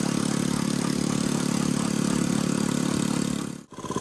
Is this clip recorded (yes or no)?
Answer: yes